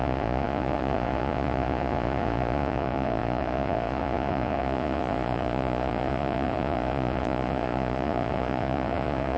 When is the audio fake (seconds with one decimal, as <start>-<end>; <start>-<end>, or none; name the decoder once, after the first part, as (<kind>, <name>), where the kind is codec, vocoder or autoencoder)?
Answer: 0.0-9.4 (vocoder, Vocos)